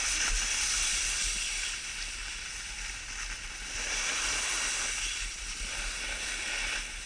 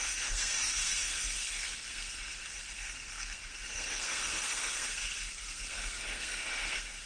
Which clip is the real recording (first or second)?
first